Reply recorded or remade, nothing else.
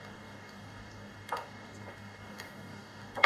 remade